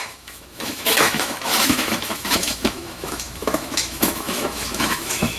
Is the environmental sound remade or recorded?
remade